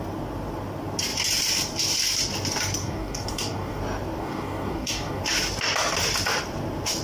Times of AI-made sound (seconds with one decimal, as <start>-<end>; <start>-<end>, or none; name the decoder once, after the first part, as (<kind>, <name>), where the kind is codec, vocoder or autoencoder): 2.8-3.8 (codec, DAC); 4.2-5.2